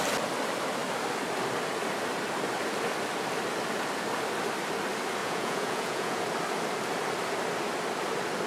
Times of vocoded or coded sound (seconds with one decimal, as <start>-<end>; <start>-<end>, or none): 5.2-6.2